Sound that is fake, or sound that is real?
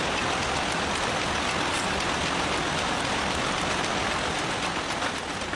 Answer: real